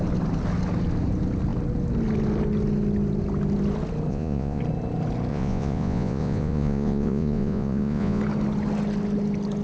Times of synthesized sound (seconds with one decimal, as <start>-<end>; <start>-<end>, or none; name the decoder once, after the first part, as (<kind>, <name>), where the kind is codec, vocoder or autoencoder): 4.1-4.6 (vocoder, Vocos); 5.3-8.2